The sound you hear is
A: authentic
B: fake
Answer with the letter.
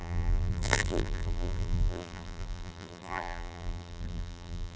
B